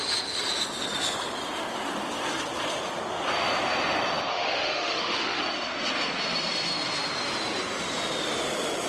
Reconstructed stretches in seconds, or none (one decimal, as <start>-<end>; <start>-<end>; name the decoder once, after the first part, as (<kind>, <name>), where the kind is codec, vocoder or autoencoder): 4.3-5.4 (autoencoder, DAC-VAE)